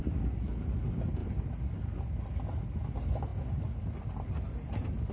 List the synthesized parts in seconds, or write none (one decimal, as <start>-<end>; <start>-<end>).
none